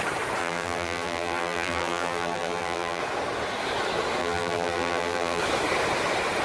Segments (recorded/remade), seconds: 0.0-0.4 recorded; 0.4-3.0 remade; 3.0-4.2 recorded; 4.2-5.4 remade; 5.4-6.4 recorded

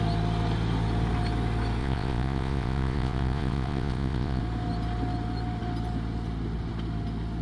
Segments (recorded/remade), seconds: 0.0-1.8 recorded; 1.8-4.4 remade; 4.4-7.4 recorded

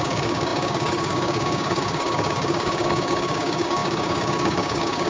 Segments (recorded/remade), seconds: 0.0-5.1 remade